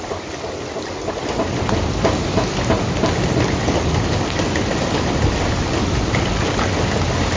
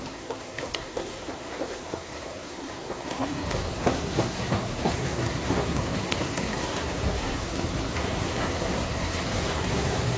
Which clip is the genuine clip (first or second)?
first